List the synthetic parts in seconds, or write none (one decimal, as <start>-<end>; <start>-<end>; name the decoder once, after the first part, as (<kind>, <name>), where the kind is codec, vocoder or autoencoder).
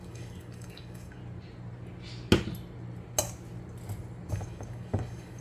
0.0-1.2 (codec, DAC); 4.3-5.4